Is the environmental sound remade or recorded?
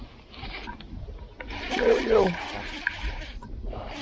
recorded